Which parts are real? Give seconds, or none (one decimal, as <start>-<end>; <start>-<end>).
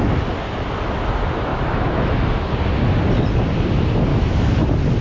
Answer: 0.0-1.5; 2.1-4.1; 4.6-5.0